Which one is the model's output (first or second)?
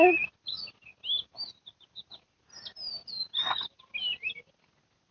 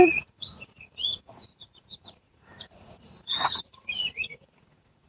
second